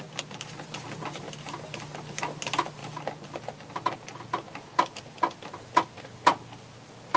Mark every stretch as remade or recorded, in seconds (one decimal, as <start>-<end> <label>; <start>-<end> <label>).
0.0-7.2 recorded